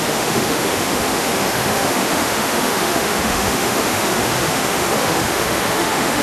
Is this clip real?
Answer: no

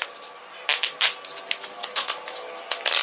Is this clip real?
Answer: yes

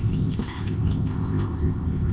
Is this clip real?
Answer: no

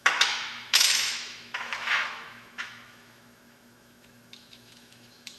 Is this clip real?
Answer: no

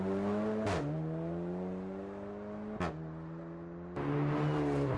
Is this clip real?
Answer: yes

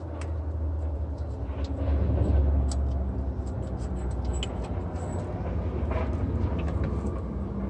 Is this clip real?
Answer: yes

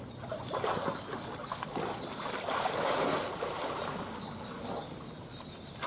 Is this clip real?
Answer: yes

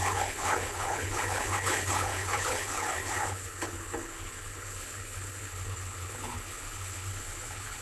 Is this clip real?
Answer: no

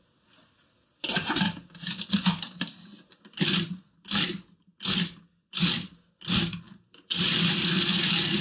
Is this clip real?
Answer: yes